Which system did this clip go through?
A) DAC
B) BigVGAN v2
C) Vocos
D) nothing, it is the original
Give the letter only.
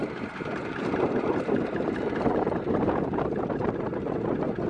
B